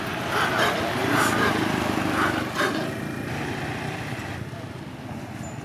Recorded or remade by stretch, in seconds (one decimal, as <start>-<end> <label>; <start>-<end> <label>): 0.0-5.6 recorded

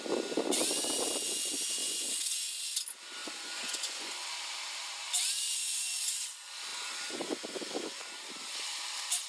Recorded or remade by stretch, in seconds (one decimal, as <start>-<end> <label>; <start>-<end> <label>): 0.0-1.8 recorded; 1.8-2.5 remade; 2.5-3.2 recorded; 3.2-4.1 remade; 4.1-9.3 recorded

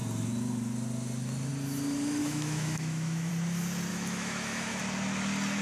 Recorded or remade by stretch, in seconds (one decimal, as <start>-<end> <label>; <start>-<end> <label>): 0.0-2.2 recorded; 2.2-3.3 remade; 3.3-3.9 recorded; 3.9-4.8 remade; 4.8-5.6 recorded